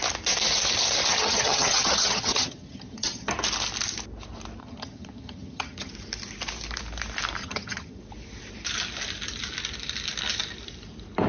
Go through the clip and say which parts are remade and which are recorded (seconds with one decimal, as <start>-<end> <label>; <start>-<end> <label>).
0.0-1.1 recorded; 1.1-3.3 remade; 3.3-4.6 recorded; 4.6-5.9 remade; 5.9-7.4 recorded; 7.4-8.0 remade; 8.0-11.3 recorded